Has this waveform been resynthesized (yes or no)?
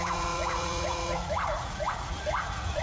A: yes